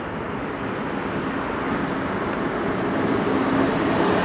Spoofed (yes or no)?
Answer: no